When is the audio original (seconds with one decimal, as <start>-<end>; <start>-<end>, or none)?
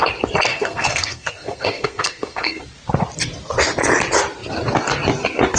0.0-0.5; 2.6-5.6